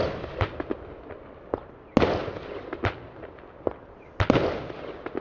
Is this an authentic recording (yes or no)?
yes